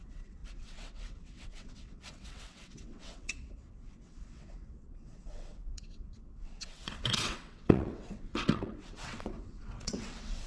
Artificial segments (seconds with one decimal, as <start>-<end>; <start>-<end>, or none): 0.0-10.5